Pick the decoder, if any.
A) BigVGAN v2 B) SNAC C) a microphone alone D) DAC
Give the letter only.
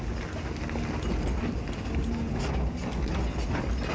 C